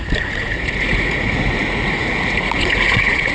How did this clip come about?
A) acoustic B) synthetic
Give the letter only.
B